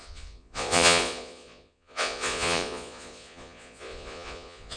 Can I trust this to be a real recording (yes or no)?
no